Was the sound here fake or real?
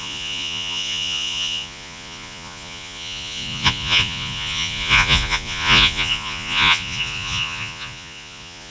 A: fake